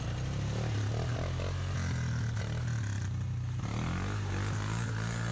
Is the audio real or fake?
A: real